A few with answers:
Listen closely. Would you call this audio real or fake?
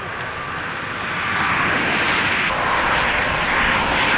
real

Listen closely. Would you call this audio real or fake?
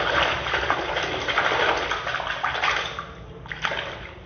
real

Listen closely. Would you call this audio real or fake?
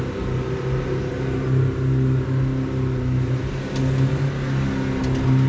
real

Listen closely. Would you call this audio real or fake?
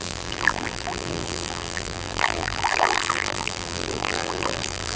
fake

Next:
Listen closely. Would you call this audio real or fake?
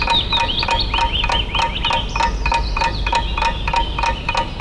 real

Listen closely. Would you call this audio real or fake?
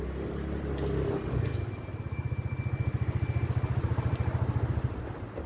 real